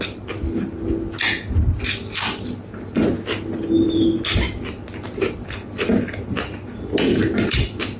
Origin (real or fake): real